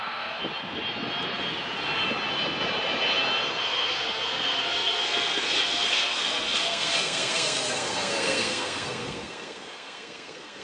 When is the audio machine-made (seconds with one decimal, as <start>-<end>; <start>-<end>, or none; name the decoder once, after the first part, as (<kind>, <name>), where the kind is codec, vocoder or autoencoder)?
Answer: 0.0-0.4 (codec, SNAC); 3.6-10.6